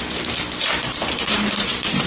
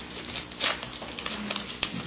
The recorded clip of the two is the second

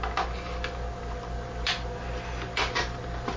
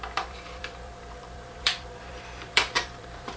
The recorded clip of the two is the first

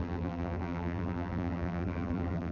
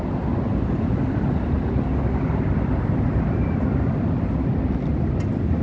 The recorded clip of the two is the second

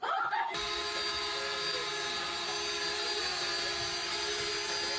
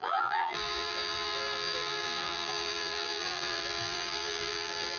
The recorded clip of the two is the first